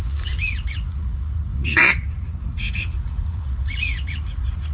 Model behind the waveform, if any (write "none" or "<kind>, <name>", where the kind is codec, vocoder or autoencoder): vocoder, Vocos